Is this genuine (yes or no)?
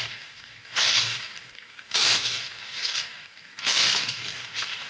no